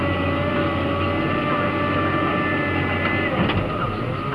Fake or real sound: real